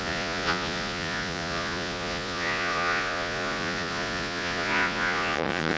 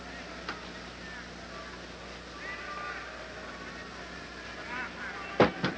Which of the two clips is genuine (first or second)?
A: second